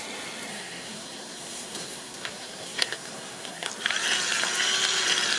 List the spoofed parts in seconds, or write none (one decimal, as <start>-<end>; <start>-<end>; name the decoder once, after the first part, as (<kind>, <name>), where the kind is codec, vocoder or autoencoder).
0.5-3.7 (codec, SNAC)